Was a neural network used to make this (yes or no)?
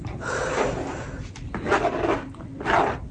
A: no